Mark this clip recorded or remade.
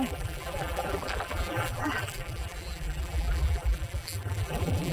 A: remade